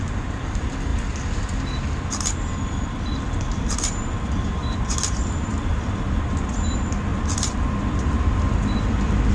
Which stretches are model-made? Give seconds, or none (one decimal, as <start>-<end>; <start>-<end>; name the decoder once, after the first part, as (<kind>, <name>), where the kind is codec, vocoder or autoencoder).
4.6-5.9 (vocoder, BigVGAN v2)

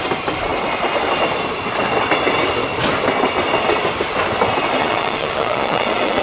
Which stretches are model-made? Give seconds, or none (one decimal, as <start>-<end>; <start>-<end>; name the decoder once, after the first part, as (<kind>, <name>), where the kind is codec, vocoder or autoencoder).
4.8-6.2 (vocoder, Vocos)

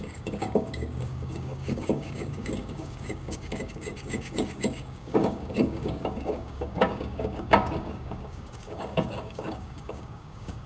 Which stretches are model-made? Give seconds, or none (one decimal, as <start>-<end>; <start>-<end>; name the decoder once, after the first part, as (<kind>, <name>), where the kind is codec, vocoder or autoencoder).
0.0-10.7 (codec, DAC)

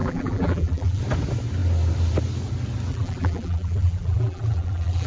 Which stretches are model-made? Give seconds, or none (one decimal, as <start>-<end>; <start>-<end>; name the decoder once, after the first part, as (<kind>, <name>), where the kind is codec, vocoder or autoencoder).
0.0-1.0 (vocoder, BigVGAN v2); 2.9-5.1

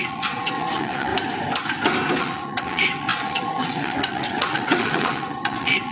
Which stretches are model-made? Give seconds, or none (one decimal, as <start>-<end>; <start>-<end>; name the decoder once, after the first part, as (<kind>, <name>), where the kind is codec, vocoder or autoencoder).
0.0-1.1 (vocoder, WaveNeXt); 2.2-5.9

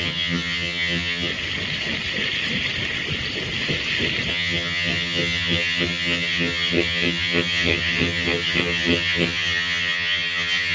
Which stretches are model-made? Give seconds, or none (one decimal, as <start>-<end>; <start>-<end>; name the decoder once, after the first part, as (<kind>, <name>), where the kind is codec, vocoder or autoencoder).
0.0-1.3 (vocoder, HiFi-GAN); 4.3-10.7